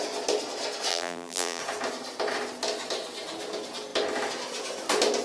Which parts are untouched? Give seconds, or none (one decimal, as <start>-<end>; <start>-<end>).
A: 0.0-0.9; 1.6-5.2